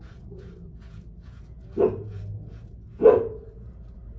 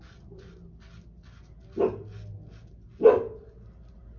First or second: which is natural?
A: second